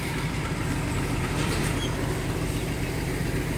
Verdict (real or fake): fake